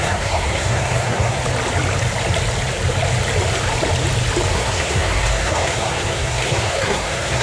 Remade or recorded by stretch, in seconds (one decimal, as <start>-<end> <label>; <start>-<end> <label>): 0.0-1.4 remade; 1.4-4.5 recorded; 4.5-7.4 remade